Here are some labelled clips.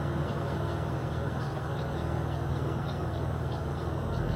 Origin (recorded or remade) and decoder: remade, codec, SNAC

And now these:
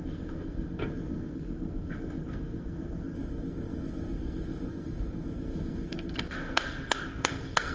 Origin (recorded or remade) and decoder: remade, codec, SNAC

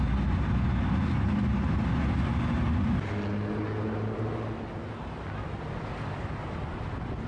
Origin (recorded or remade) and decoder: recorded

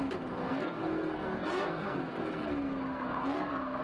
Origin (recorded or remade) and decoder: remade, codec, SNAC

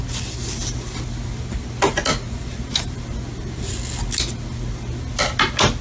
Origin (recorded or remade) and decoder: recorded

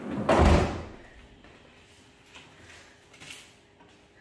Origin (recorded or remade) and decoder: recorded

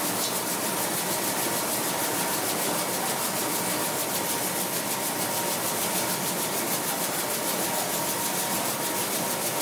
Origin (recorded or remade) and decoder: recorded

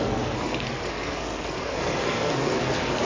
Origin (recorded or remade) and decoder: remade, codec, SNAC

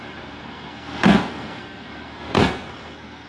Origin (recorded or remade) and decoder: remade, codec, SNAC